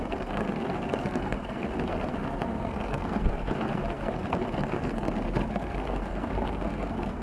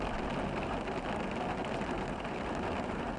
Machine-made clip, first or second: first